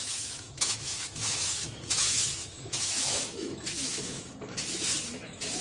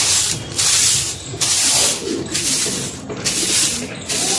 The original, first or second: second